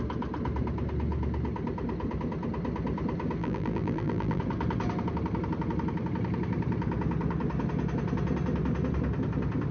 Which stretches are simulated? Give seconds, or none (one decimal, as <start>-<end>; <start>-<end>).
3.4-4.4